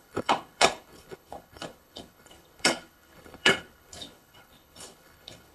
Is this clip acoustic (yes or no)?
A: no